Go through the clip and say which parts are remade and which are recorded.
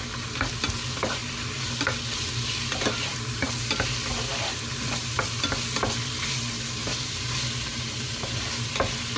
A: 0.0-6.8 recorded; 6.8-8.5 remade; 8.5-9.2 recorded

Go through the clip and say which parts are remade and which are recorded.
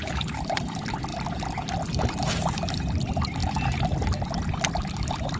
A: 0.0-5.4 recorded